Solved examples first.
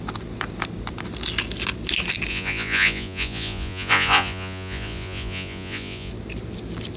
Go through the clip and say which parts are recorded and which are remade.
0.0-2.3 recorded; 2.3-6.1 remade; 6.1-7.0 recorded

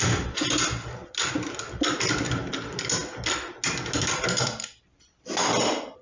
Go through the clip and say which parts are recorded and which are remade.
0.0-6.0 recorded